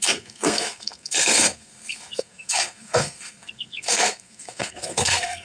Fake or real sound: fake